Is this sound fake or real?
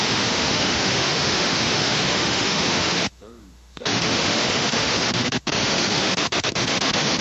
fake